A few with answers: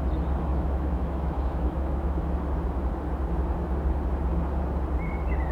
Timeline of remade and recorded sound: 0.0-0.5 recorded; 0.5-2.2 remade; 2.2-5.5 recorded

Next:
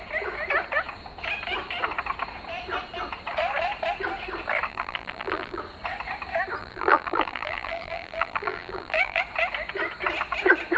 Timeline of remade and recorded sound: 0.0-4.7 recorded; 4.7-5.6 remade; 5.6-6.6 recorded; 6.6-9.2 remade; 9.2-10.8 recorded

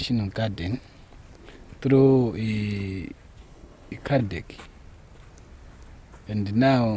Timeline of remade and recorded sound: 0.0-3.4 recorded; 3.4-4.2 remade; 4.2-7.0 recorded

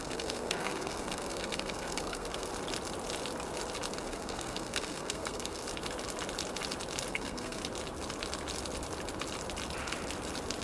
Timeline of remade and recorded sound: 0.0-2.5 remade; 2.5-4.0 recorded; 4.0-5.6 remade; 5.6-7.1 recorded; 7.1-7.6 remade; 7.6-10.6 recorded

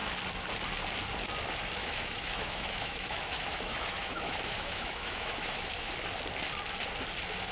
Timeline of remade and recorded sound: 0.0-1.8 recorded; 1.8-5.9 remade; 5.9-7.5 recorded

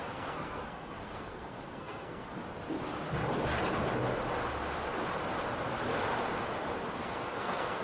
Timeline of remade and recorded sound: 0.0-2.3 remade; 2.3-7.0 recorded; 7.0-7.8 remade

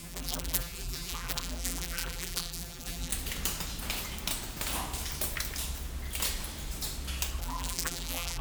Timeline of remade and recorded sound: 0.0-3.1 remade; 3.1-7.4 recorded; 7.4-8.4 remade